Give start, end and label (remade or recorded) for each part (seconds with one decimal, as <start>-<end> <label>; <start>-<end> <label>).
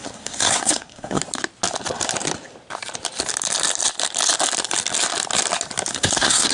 0.0-1.2 remade; 1.2-5.9 recorded; 5.9-6.5 remade